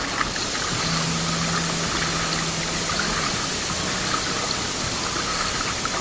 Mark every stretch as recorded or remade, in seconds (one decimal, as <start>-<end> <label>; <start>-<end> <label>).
0.0-6.0 recorded